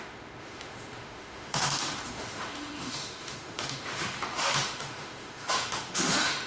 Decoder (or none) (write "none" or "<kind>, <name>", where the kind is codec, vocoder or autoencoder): autoencoder, DAC-VAE